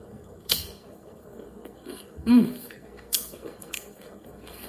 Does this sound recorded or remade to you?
remade